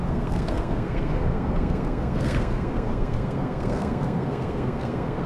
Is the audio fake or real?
fake